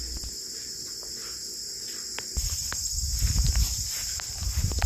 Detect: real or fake real